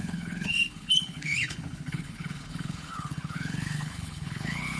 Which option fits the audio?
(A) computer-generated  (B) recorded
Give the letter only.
A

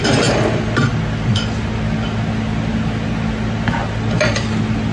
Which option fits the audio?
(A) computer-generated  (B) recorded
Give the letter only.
B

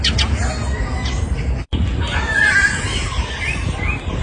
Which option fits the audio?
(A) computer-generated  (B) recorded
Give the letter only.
B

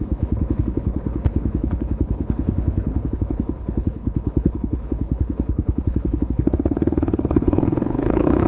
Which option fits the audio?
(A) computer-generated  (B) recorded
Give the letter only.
A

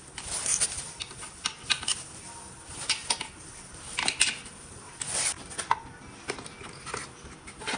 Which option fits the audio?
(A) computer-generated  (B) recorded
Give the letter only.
B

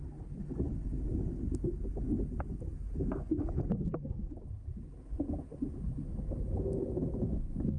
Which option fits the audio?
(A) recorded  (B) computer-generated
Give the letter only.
A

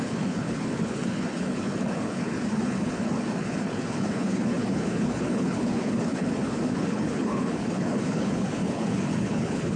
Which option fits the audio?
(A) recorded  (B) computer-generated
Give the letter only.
B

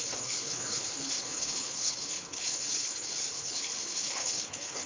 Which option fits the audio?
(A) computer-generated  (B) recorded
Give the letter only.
A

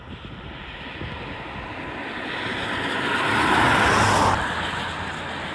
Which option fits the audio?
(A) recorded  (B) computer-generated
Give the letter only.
A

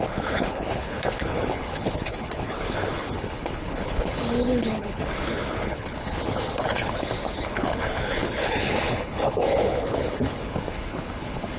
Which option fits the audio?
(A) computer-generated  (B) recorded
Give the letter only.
A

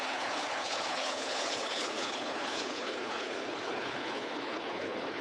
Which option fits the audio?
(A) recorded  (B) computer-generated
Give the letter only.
B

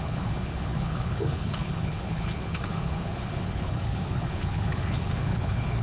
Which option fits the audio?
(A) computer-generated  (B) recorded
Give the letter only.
A